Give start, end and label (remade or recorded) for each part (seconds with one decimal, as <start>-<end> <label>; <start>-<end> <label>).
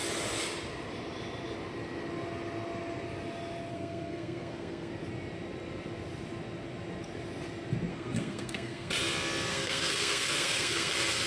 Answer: 0.0-3.7 recorded; 3.7-4.9 remade; 4.9-7.9 recorded; 7.9-8.9 remade; 8.9-9.5 recorded; 9.5-10.9 remade; 10.9-11.3 recorded